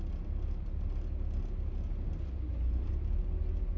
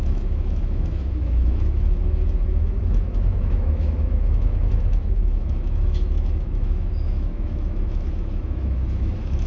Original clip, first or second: first